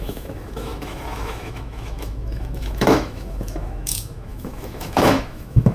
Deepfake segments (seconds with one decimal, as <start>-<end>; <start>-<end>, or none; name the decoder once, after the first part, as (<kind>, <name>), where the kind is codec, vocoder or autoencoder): 0.0-5.7 (autoencoder, DAC-VAE)